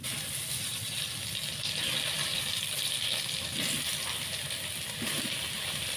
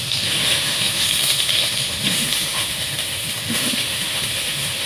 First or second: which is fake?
second